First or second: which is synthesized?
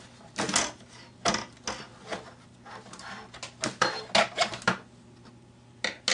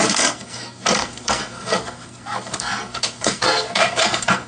second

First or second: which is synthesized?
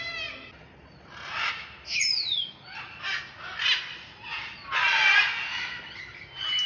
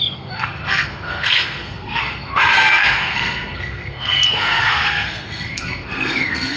second